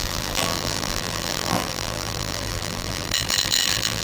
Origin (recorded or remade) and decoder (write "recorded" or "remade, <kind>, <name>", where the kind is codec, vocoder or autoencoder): remade, vocoder, BigVGAN v2